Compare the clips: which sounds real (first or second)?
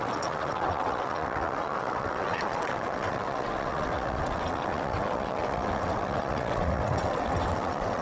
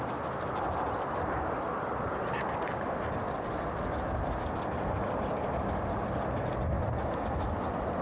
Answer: second